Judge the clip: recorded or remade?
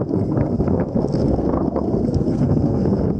remade